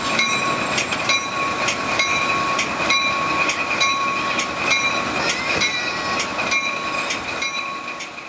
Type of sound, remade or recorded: recorded